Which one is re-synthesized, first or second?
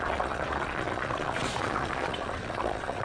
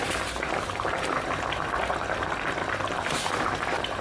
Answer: first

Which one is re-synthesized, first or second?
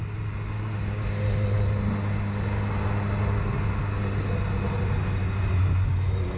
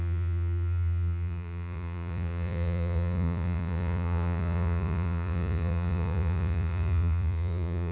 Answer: second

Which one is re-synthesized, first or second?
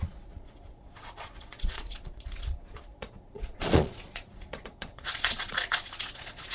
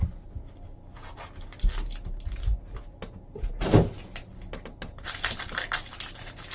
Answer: first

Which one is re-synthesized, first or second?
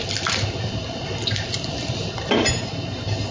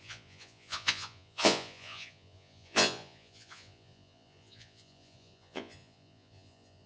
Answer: second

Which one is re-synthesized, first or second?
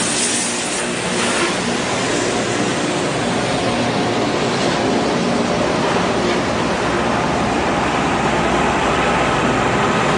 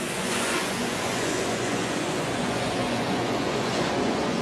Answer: second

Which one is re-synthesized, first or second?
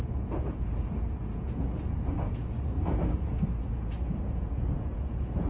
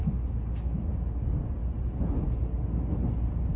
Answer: first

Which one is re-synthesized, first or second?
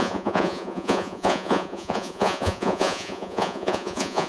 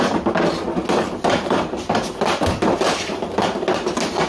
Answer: first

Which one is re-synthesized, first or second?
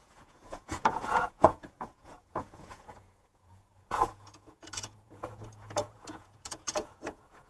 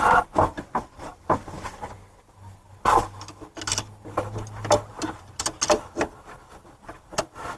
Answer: first